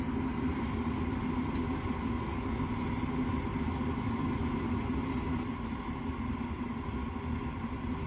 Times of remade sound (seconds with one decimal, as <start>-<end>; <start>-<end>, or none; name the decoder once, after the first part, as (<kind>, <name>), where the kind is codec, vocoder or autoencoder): none